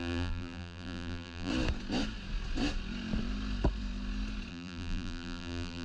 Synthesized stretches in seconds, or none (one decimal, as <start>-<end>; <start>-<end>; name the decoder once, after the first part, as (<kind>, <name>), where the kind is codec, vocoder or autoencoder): 0.0-1.5 (vocoder, BigVGAN v2); 4.5-5.8